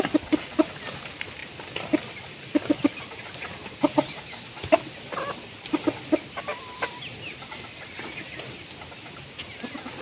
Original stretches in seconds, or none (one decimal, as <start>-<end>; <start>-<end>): 0.0-1.4; 4.2-10.0